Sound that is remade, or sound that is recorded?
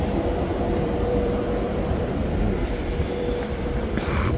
remade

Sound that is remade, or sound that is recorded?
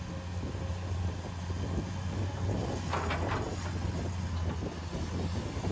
recorded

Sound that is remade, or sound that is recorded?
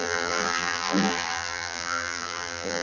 remade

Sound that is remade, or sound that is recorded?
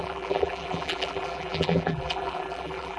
remade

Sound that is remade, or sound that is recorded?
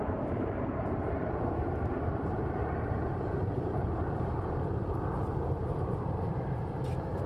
remade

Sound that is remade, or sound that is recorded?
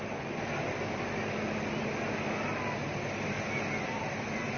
recorded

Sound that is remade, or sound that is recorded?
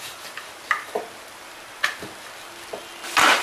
recorded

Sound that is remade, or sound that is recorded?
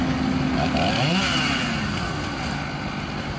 recorded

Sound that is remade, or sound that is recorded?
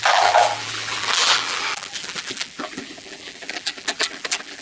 remade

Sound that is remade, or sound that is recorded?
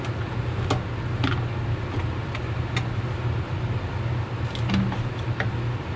recorded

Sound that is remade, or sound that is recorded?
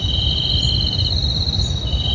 recorded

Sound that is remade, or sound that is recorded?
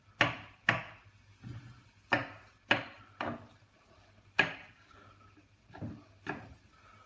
recorded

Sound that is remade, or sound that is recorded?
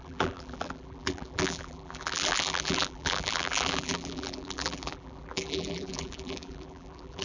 remade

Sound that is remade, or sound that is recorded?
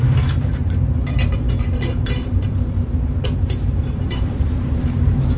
remade